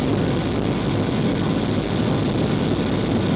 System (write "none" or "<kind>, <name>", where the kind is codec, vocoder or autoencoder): none